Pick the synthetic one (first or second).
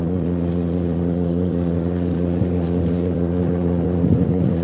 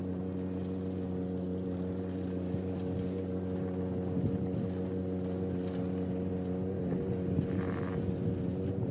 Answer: first